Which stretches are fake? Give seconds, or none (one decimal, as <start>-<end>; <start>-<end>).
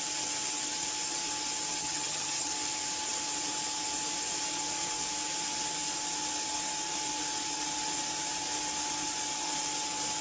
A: 1.8-2.5